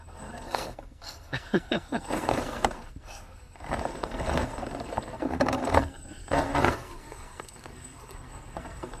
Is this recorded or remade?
remade